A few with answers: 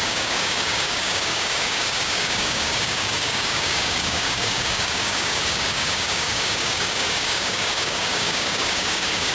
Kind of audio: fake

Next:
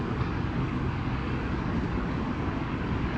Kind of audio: fake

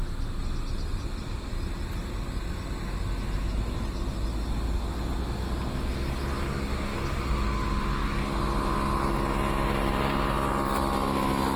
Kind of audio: real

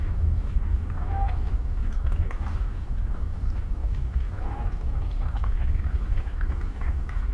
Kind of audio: fake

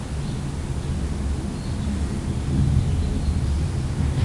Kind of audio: real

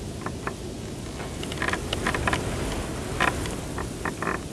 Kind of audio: real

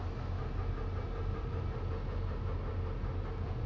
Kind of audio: real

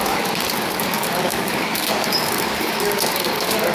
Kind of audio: fake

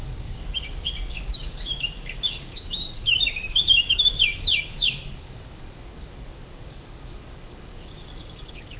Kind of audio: fake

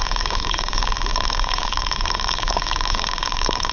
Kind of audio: fake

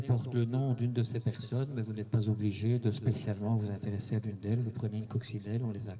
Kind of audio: fake